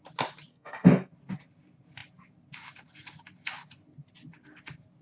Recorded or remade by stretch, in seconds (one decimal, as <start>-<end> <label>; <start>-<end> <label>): 0.0-0.5 recorded; 0.5-1.1 remade; 1.1-5.0 recorded